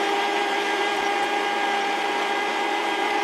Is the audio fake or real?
fake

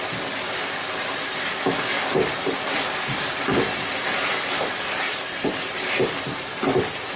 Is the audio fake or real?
fake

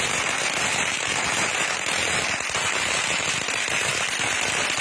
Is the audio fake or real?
real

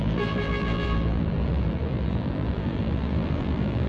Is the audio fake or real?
fake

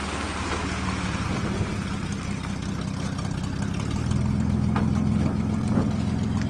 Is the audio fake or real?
real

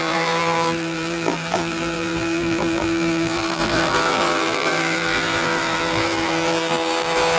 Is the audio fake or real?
fake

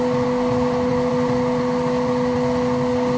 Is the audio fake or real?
real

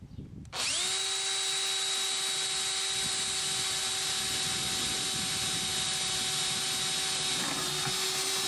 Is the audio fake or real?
real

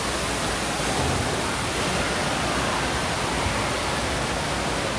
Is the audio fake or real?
real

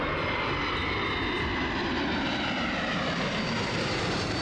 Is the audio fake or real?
fake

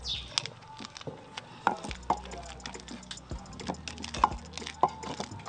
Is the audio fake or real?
real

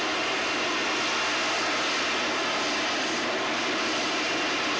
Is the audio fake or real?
real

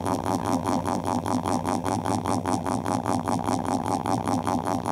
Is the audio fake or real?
fake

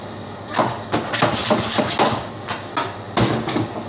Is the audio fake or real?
real